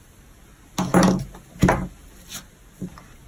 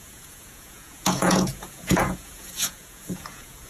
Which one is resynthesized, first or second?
second